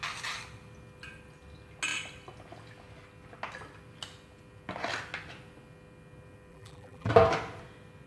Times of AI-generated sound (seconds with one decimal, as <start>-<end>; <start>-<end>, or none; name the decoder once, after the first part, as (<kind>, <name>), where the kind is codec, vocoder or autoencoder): 6.5-7.1 (vocoder, BigVGAN v2)